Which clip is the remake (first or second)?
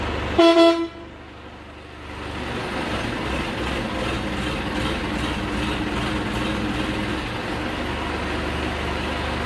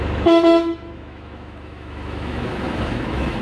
second